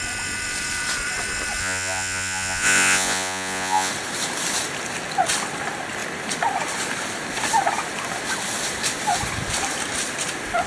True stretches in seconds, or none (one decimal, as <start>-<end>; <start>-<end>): 0.0-1.6; 3.9-10.7